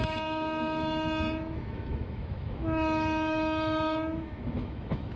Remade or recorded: remade